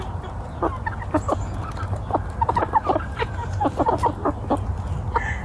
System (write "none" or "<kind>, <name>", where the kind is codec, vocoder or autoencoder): none